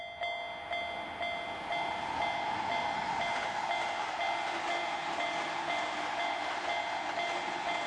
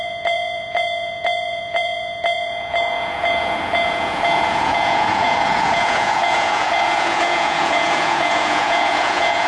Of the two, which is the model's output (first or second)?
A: second